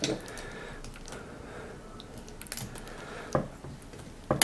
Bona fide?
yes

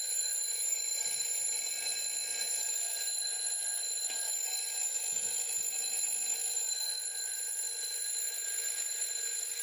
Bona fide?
no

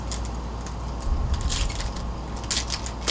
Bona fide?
yes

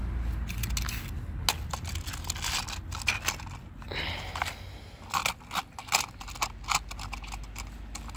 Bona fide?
yes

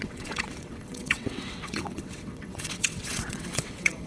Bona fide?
no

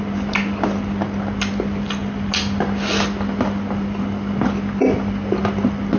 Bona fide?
yes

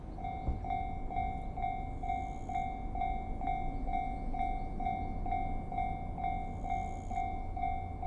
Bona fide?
yes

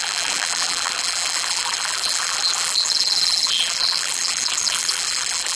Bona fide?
no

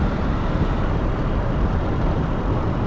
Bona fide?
no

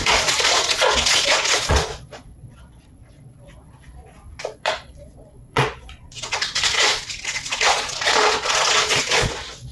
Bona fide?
no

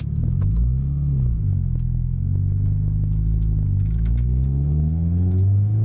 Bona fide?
no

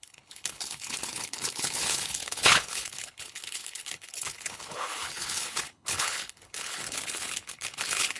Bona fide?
no